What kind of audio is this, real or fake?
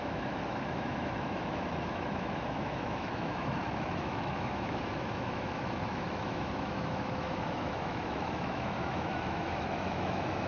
fake